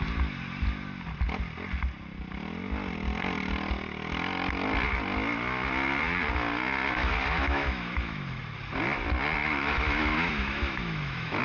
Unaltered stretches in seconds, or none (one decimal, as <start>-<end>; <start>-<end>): 0.0-7.0; 8.4-9.4